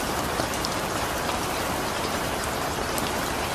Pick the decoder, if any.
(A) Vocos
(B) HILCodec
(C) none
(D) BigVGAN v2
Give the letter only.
D